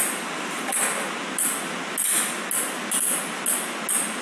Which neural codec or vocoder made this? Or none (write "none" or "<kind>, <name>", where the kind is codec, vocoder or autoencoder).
none